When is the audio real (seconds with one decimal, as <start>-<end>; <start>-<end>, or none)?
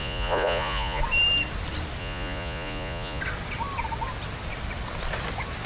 1.0-2.0; 3.2-5.7